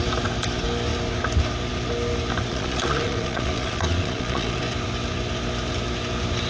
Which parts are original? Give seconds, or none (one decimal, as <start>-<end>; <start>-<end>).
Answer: 0.0-2.5; 4.6-6.5